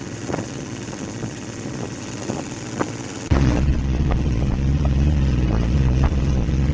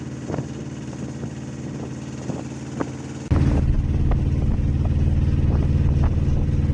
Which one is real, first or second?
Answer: second